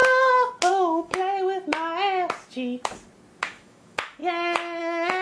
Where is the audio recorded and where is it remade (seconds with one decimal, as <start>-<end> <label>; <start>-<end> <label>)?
0.0-0.7 recorded; 0.7-1.2 remade; 1.2-3.4 recorded; 3.4-4.2 remade; 4.2-4.8 recorded; 4.8-5.2 remade